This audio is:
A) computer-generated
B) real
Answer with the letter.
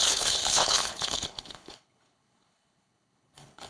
A